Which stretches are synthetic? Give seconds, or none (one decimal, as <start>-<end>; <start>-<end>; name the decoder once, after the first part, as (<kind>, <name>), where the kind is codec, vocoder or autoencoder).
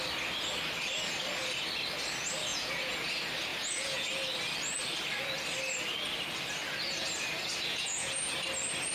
2.5-3.1 (vocoder, Vocos); 3.5-4.1; 7.7-8.3